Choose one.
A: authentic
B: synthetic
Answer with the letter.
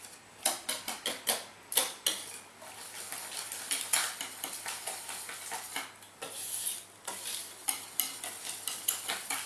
A